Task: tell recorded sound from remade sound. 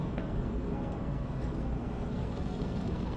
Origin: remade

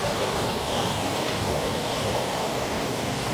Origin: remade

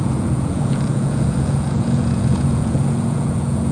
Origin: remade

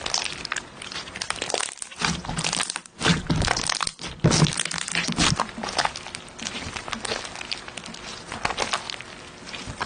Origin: recorded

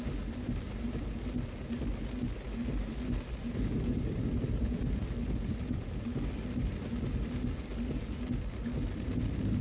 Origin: recorded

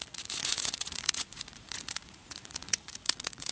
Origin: remade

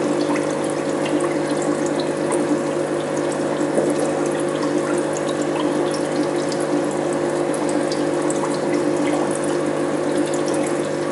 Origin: recorded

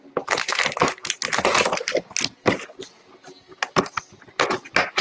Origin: recorded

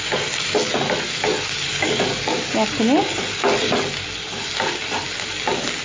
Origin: recorded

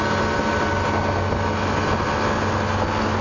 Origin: recorded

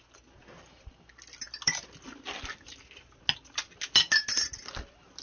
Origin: recorded